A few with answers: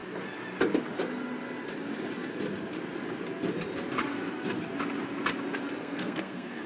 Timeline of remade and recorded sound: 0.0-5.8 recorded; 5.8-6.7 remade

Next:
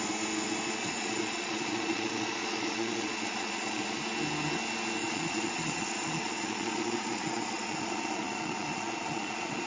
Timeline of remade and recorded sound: 0.0-0.8 recorded; 0.8-4.0 remade; 4.0-5.0 recorded; 5.0-9.7 remade

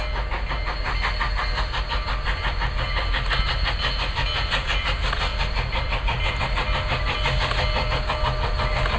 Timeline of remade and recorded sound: 0.0-5.3 recorded; 5.3-6.4 remade; 6.4-9.0 recorded

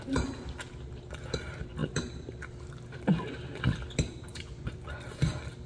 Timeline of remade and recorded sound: 0.0-4.3 recorded; 4.3-5.0 remade; 5.0-5.7 recorded

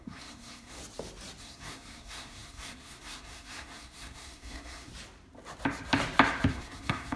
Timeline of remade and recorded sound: 0.0-0.8 remade; 0.8-1.4 recorded; 1.4-4.9 remade; 4.9-6.5 recorded; 6.5-7.2 remade

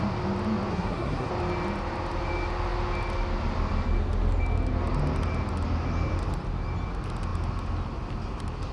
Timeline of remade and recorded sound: 0.0-0.7 recorded; 0.7-1.3 remade; 1.3-8.7 recorded

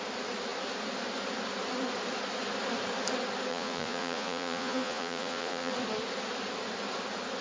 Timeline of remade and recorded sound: 0.0-3.5 recorded; 3.5-5.7 remade; 5.7-7.4 recorded

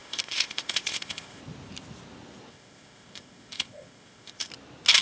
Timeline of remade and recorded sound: 0.0-1.4 remade; 1.4-2.5 recorded; 2.5-4.5 remade; 4.5-5.0 recorded